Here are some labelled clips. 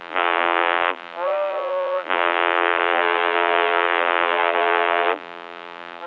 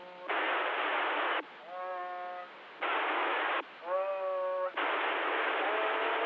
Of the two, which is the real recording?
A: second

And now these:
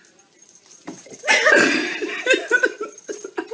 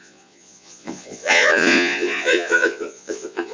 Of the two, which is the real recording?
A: first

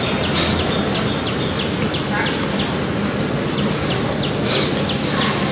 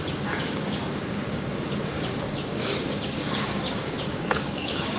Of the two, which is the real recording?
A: first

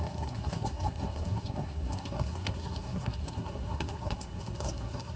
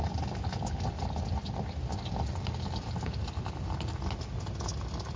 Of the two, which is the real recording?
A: second